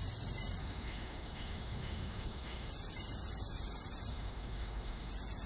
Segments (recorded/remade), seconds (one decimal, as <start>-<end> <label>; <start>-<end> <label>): 0.0-0.6 recorded; 0.6-2.7 remade; 2.7-4.1 recorded; 4.1-5.1 remade; 5.1-5.5 recorded